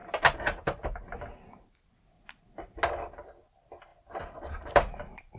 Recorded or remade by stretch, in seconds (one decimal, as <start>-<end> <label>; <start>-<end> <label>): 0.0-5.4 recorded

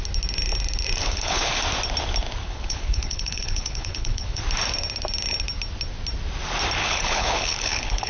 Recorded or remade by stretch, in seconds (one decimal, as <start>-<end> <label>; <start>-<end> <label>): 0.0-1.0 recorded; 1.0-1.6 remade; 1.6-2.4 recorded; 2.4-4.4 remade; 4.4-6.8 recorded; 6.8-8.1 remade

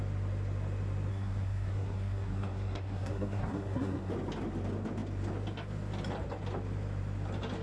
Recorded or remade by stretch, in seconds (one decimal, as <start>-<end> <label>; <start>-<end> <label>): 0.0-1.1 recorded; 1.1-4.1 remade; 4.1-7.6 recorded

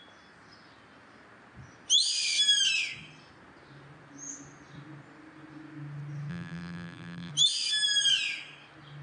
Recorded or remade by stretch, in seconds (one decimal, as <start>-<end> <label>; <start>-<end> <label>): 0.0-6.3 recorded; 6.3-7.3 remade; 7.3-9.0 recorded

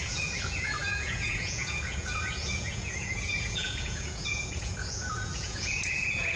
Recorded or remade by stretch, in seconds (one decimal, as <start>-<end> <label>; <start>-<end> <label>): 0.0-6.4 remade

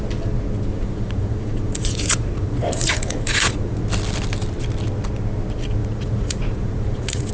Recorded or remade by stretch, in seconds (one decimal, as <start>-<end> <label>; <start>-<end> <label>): 0.0-0.7 recorded; 0.7-3.8 remade; 3.8-5.8 recorded; 5.8-7.3 remade

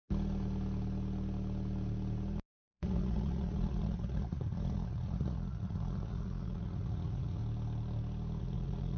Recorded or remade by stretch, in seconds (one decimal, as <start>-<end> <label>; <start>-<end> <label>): 0.0-2.5 recorded; 2.5-7.4 remade; 7.4-8.4 recorded; 8.4-9.0 remade